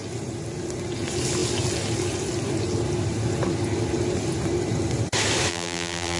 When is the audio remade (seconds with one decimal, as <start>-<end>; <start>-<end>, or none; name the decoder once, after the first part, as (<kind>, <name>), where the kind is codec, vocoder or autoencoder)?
5.5-6.2 (vocoder, BigVGAN v2)